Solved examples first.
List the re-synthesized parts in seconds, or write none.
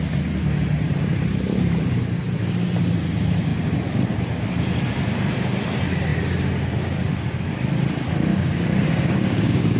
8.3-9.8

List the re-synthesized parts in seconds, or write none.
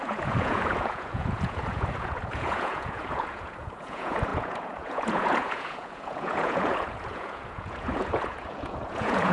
0.0-9.3